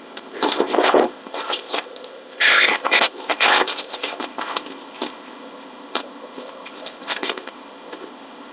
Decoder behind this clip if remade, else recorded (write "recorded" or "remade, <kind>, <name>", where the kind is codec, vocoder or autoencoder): remade, codec, ZipCodec